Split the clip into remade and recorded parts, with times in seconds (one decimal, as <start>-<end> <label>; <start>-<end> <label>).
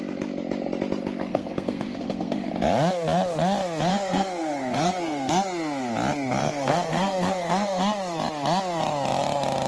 0.0-1.3 recorded; 1.3-2.5 remade; 2.5-3.9 recorded; 3.9-5.3 remade; 5.3-6.4 recorded; 6.4-7.8 remade; 7.8-9.7 recorded